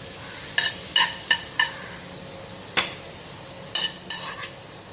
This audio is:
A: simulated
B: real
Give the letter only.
B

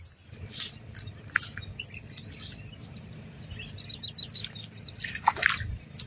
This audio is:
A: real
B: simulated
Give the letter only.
A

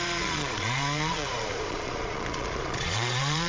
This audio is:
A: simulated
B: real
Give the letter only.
A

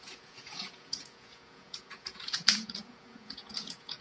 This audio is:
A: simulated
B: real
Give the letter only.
A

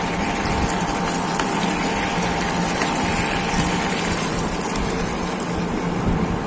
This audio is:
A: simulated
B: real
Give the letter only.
B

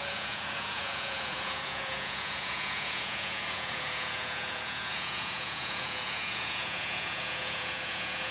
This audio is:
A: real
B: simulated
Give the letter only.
B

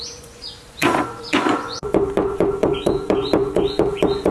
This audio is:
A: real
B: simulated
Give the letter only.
B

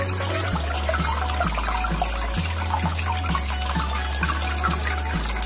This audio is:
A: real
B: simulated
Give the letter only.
A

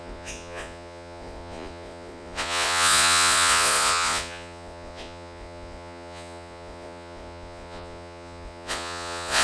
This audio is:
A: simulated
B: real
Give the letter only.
A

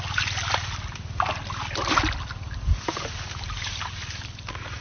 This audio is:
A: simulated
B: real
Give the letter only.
B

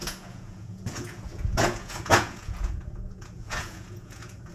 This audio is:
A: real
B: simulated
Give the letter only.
B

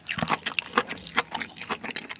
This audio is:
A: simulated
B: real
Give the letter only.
B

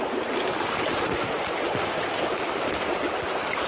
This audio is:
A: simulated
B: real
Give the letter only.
B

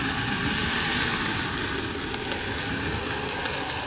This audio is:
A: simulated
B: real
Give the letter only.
B